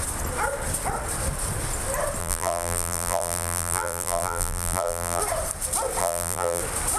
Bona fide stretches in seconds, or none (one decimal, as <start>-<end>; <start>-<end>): 0.0-2.2; 5.2-6.0; 6.6-7.0